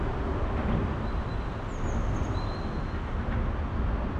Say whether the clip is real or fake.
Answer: real